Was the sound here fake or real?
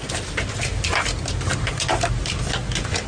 real